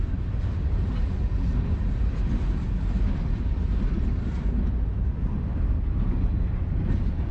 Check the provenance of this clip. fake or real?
real